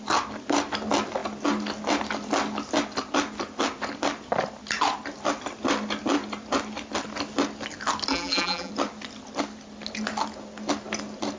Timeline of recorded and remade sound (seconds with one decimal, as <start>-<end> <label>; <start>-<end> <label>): 0.0-8.1 recorded; 8.1-8.7 remade; 8.7-11.4 recorded